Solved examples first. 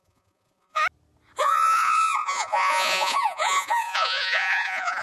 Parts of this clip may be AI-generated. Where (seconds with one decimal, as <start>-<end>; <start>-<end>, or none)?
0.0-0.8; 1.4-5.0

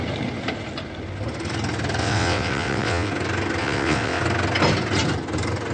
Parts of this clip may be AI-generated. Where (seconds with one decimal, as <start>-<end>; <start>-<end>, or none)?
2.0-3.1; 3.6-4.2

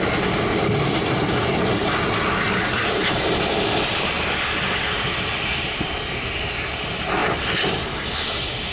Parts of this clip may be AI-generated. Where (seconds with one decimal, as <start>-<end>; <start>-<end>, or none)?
none

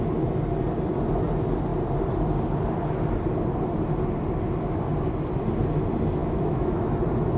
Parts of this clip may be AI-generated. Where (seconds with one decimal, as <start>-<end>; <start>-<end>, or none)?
6.2-6.9